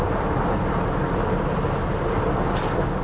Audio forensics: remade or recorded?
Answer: recorded